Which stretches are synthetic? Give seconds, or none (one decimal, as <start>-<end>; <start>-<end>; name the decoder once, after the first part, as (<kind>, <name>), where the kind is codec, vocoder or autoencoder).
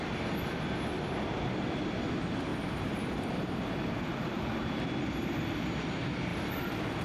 2.5-4.8 (vocoder, BigVGAN v2); 6.3-7.0